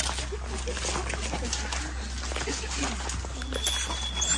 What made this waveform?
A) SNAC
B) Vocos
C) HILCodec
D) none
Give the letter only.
D